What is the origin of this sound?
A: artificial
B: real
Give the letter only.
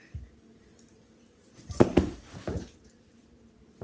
B